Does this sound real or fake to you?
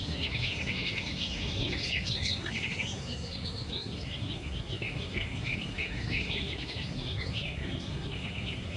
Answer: fake